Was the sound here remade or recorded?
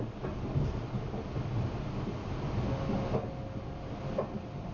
recorded